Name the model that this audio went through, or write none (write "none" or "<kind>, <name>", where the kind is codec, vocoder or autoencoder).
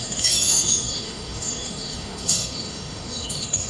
autoencoder, DAC-VAE